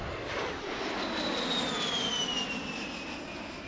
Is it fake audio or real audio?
real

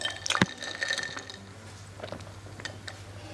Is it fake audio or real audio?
real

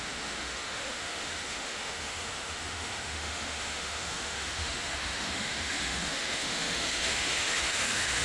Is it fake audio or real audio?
fake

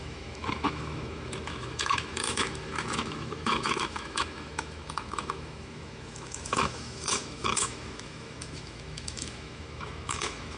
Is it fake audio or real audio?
fake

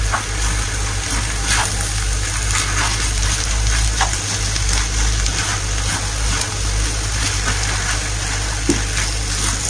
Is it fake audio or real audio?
real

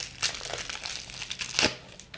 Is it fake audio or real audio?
real